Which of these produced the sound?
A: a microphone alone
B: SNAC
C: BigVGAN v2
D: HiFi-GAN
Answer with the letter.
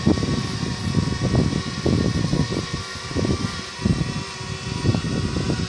A